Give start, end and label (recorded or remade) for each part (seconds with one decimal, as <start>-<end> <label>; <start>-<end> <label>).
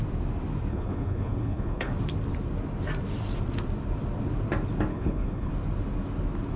0.0-0.7 recorded; 0.7-1.9 remade; 1.9-4.9 recorded; 4.9-5.5 remade; 5.5-6.6 recorded